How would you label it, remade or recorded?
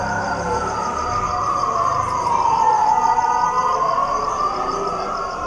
recorded